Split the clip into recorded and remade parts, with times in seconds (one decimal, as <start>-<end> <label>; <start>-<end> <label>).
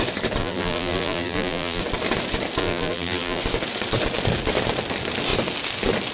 0.0-0.4 recorded; 0.4-1.8 remade; 1.8-2.6 recorded; 2.6-3.4 remade; 3.4-6.1 recorded